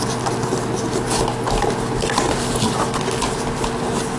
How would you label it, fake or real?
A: real